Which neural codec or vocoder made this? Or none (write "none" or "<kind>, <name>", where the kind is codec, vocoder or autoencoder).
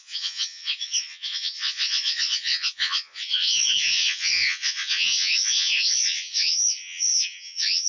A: vocoder, Vocos